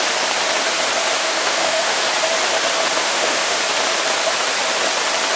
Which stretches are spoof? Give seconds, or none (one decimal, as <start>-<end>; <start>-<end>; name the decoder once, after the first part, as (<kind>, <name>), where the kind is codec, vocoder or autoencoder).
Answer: 1.2-2.0 (autoencoder, DAC-VAE); 3.0-3.6